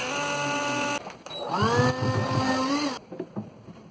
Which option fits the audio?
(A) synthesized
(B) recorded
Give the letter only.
B